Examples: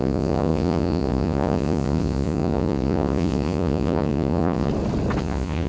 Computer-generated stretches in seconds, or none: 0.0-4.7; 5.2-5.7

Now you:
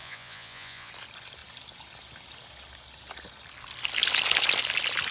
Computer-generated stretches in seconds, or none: 0.0-0.9

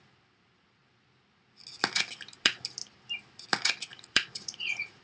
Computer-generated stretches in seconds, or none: 3.9-5.0

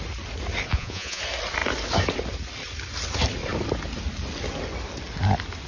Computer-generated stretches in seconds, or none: 0.7-1.2

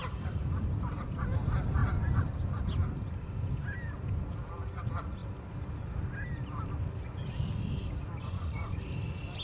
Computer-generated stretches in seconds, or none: 8.2-8.8